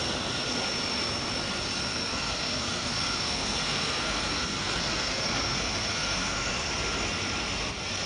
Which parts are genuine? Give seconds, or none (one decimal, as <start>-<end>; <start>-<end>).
0.0-1.8; 6.7-8.1